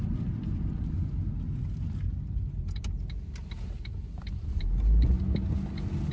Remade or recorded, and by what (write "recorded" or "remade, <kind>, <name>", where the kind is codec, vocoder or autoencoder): recorded